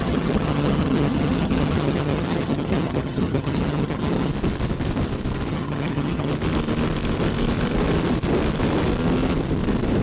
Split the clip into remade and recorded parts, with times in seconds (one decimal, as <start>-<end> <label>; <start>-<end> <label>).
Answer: 0.0-4.3 remade; 4.3-5.5 recorded; 5.5-6.3 remade; 6.3-10.0 recorded